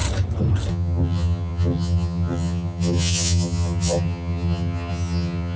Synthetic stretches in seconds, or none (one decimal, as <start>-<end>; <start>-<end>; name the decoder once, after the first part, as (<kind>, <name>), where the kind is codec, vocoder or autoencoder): 0.7-5.6 (vocoder, HiFi-GAN)